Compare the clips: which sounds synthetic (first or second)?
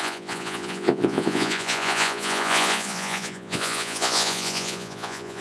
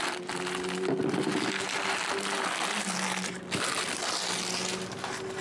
first